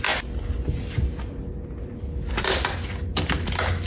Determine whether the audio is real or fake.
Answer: real